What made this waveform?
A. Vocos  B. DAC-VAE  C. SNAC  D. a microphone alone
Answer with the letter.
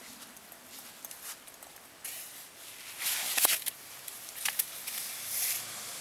D